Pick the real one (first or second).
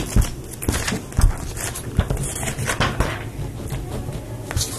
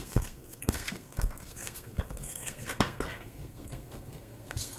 first